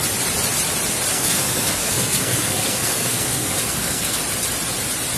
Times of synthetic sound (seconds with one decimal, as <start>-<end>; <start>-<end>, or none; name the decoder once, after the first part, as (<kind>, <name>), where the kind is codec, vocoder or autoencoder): 1.1-4.2 (codec, SNAC)